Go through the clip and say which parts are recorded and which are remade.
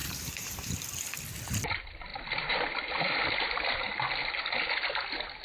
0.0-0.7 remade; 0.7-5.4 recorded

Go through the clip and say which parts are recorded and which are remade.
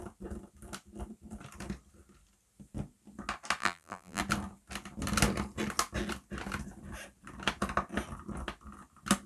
0.0-3.6 recorded; 3.6-4.2 remade; 4.2-9.3 recorded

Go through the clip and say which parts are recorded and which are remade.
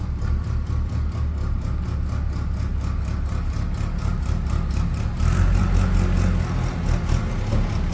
0.0-7.9 recorded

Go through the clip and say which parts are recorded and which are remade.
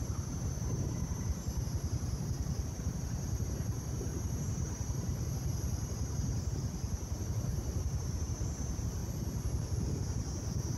0.0-9.0 remade; 9.0-10.8 recorded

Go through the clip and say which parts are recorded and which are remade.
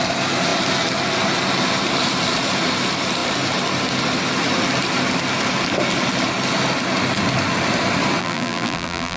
0.0-8.2 recorded; 8.2-9.2 remade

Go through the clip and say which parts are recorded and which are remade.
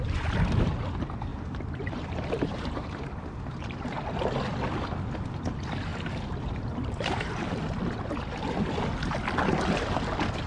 0.0-1.3 recorded; 1.3-4.0 remade; 4.0-5.9 recorded; 5.9-7.6 remade; 7.6-10.5 recorded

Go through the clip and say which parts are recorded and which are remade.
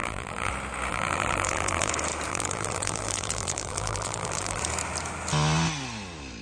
0.0-0.5 remade; 0.5-0.9 recorded; 0.9-1.9 remade; 1.9-2.3 recorded; 2.3-4.6 remade; 4.6-6.4 recorded